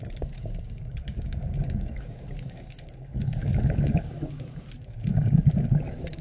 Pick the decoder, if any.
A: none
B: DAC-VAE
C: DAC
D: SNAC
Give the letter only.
C